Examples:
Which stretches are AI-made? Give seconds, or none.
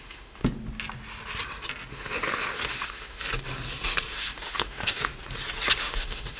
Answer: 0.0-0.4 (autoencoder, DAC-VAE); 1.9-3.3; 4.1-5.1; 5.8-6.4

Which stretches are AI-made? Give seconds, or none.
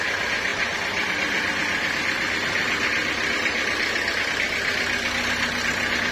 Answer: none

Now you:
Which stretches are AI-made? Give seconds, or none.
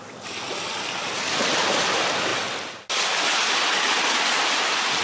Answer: none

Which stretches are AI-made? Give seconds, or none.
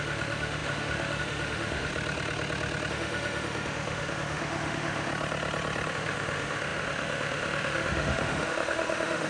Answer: 0.0-1.9 (autoencoder, DAC-VAE); 2.9-5.1; 5.9-9.3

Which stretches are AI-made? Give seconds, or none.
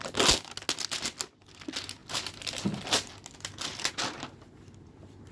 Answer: none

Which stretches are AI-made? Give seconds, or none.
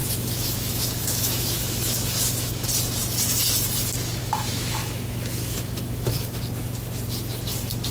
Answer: 0.0-2.7 (autoencoder, DAC-VAE); 4.2-6.4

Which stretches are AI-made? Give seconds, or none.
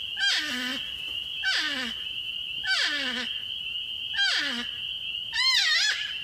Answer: none